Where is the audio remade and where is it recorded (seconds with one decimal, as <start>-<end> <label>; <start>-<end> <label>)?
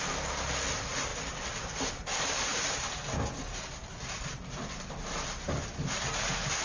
0.0-6.6 recorded